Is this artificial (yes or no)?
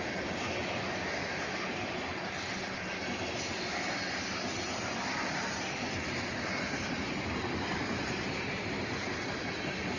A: no